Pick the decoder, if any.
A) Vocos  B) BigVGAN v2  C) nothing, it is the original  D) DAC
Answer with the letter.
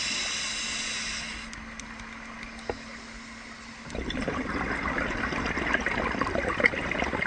C